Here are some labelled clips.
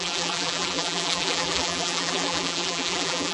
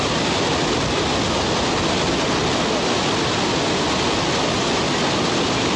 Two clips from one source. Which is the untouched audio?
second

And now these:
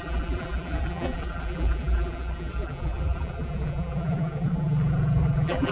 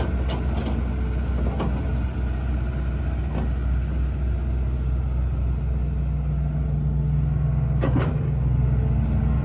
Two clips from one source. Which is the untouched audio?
second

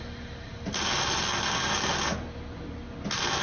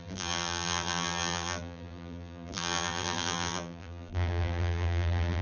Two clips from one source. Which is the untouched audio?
first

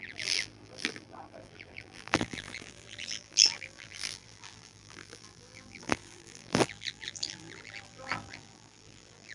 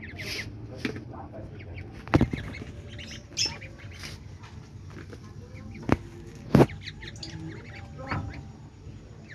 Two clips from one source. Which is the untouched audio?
second